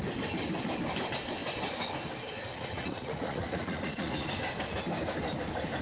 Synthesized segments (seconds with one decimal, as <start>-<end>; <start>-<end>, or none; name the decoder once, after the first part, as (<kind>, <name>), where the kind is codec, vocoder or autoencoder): 2.5-4.3 (vocoder, Vocos)